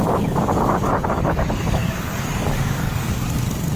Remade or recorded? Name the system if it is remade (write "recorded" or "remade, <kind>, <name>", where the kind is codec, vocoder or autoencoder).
remade, codec, DAC